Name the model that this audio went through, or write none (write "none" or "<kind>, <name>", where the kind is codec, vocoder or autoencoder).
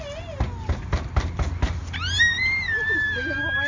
none